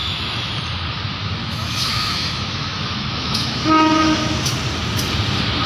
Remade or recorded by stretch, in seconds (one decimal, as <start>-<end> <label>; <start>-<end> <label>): 0.0-0.5 remade; 0.5-1.4 recorded; 1.4-4.5 remade; 4.5-5.7 recorded